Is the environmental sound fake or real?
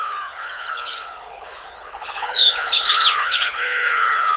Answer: fake